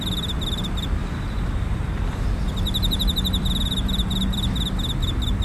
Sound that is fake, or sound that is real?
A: fake